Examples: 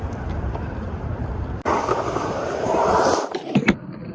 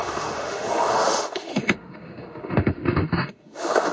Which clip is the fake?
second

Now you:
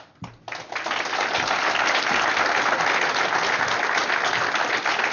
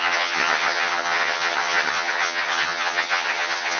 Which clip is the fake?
second